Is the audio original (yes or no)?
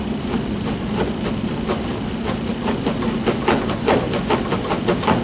yes